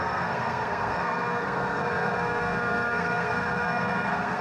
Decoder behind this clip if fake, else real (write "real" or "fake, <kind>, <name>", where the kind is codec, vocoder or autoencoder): fake, codec, SNAC